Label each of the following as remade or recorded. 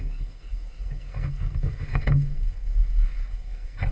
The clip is remade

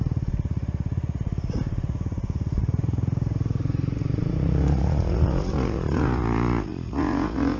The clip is remade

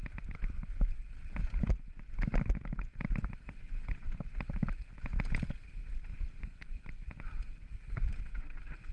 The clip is recorded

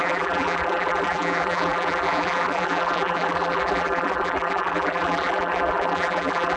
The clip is remade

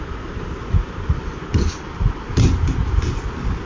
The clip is recorded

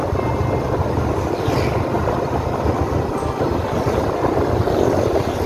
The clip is recorded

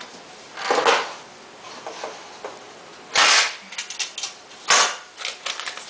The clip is recorded